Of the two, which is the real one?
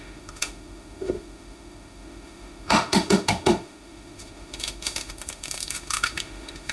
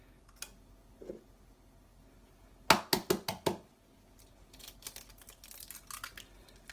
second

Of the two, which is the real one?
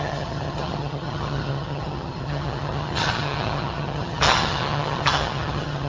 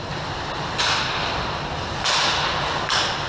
second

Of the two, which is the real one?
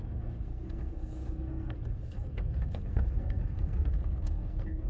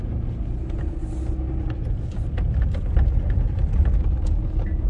second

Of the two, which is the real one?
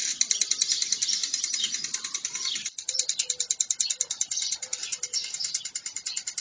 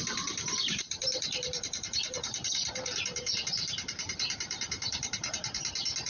first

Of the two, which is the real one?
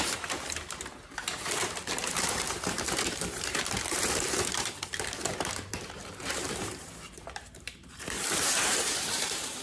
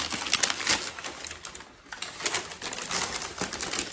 second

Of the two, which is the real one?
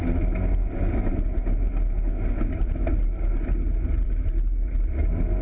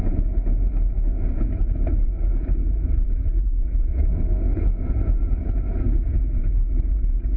first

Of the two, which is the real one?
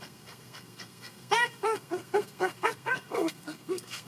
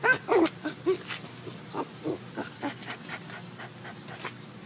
second